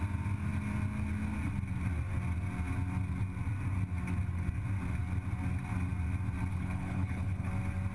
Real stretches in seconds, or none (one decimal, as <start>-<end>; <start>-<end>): 0.0-6.5; 7.5-7.9